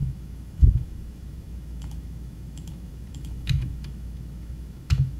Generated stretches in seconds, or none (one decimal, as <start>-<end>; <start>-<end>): 0.0-5.2